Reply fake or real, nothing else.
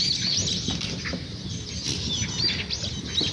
real